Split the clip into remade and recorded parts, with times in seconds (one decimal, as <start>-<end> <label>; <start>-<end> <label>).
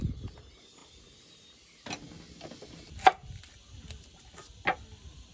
0.0-5.3 recorded